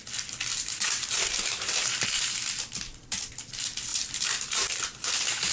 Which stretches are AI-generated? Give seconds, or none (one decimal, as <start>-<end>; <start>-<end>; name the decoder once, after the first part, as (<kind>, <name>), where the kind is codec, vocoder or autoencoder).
0.5-2.5 (vocoder, BigVGAN v2); 3.9-5.5